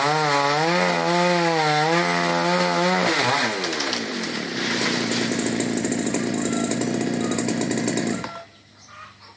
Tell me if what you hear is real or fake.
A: real